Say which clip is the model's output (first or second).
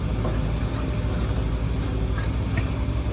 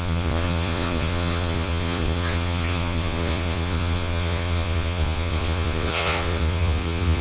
second